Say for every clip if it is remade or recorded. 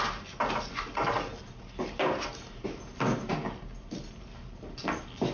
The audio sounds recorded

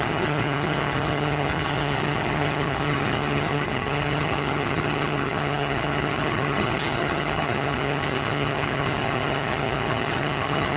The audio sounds remade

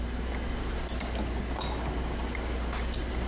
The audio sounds recorded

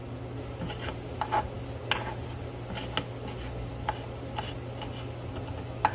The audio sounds recorded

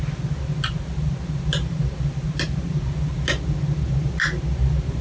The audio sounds recorded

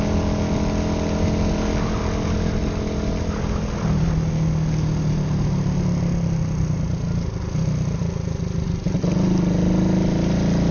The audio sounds recorded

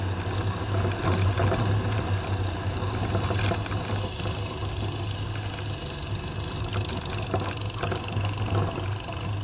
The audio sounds recorded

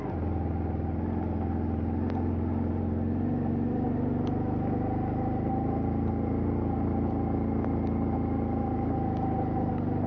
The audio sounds recorded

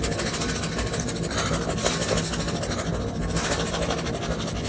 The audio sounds recorded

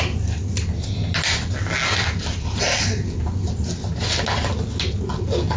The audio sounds recorded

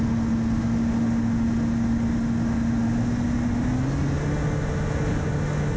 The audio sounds recorded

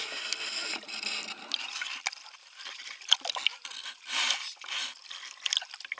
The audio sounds recorded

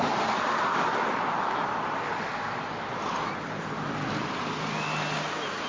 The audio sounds recorded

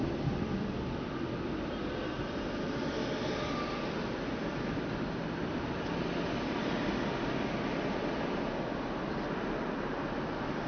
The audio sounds recorded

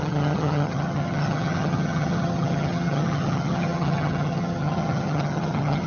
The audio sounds remade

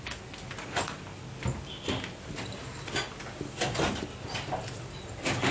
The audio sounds recorded